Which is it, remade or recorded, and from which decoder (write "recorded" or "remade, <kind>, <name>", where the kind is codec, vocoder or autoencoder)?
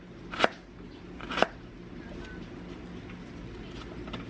recorded